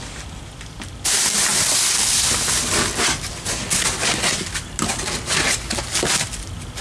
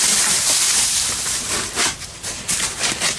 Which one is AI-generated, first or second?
second